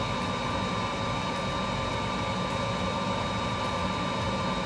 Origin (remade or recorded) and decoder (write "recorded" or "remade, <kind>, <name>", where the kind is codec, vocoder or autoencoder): recorded